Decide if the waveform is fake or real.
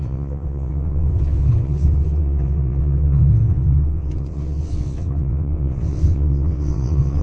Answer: fake